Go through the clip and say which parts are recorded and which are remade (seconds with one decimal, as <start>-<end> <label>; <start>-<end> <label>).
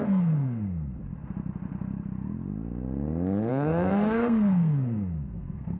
0.0-1.0 remade; 1.0-3.5 recorded; 3.5-5.8 remade